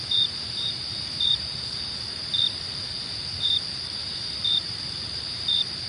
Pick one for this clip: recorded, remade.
remade